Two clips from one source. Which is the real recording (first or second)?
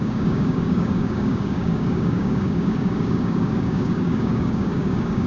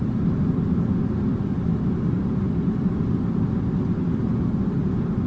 second